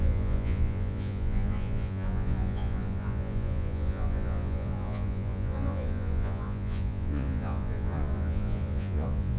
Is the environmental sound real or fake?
fake